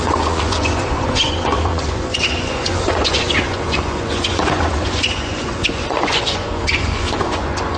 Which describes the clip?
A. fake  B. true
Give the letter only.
A